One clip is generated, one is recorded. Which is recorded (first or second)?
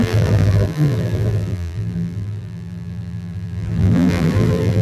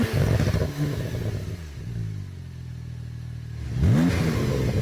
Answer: second